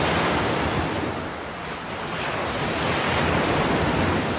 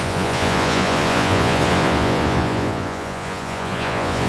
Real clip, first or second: first